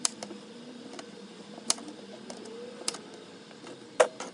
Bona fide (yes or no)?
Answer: yes